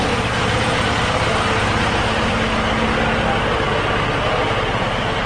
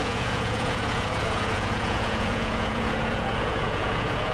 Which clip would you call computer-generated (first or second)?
second